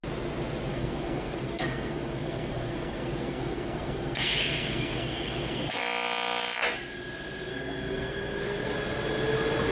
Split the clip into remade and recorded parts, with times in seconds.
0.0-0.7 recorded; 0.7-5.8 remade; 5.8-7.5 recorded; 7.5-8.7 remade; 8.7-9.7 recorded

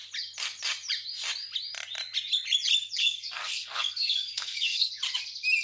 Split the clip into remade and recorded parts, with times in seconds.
0.0-3.0 recorded; 3.0-4.9 remade; 4.9-5.6 recorded

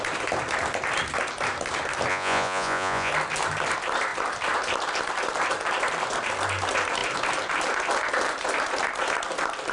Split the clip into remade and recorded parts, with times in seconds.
0.0-2.1 recorded; 2.1-3.1 remade; 3.1-9.7 recorded